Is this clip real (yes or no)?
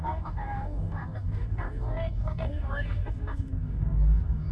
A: no